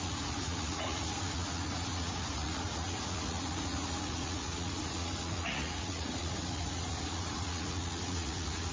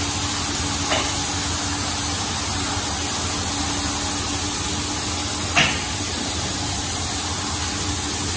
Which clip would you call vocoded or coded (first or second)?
first